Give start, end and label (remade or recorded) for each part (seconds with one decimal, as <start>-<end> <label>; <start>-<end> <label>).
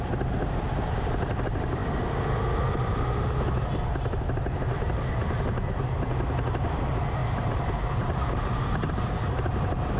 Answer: 0.0-7.2 recorded; 7.2-8.9 remade; 8.9-10.0 recorded